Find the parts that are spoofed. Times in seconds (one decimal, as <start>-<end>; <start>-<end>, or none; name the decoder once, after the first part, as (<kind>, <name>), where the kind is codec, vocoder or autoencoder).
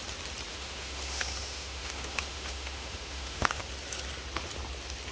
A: 0.5-3.6 (autoencoder, DAC-VAE)